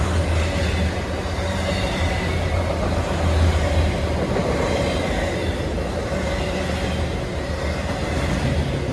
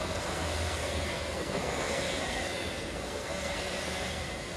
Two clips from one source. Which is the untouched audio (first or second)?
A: first